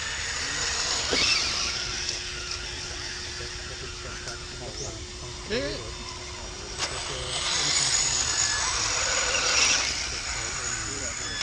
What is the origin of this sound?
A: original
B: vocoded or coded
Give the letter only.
A